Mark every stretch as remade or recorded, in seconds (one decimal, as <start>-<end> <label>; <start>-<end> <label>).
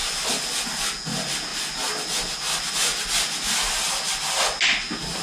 0.0-5.2 recorded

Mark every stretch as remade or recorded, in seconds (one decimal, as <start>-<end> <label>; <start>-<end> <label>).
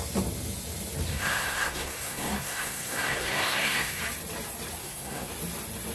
0.0-1.1 recorded; 1.1-4.0 remade; 4.0-4.8 recorded; 4.8-5.3 remade; 5.3-5.9 recorded